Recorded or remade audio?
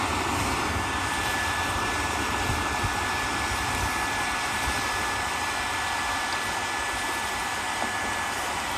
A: recorded